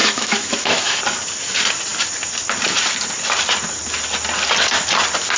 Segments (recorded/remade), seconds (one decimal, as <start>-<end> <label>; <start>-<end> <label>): 0.0-1.0 remade; 1.0-5.4 recorded